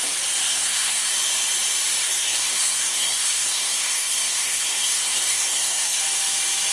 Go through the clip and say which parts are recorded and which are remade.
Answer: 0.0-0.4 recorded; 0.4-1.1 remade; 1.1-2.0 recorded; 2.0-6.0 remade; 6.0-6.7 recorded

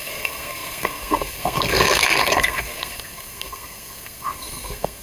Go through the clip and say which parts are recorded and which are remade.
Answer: 0.0-5.0 remade

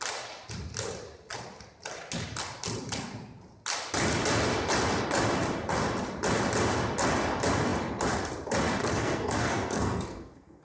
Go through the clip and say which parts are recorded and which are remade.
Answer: 0.0-8.8 recorded; 8.8-10.6 remade

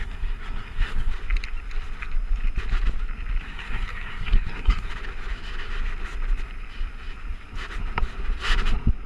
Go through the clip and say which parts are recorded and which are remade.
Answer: 0.0-1.1 remade; 1.1-3.4 recorded; 3.4-4.9 remade; 4.9-9.1 recorded

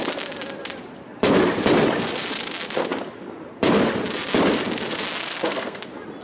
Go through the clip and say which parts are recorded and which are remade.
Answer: 0.0-5.2 recorded; 5.2-5.8 remade; 5.8-6.2 recorded